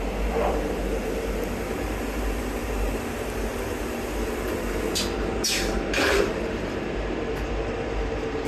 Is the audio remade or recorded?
remade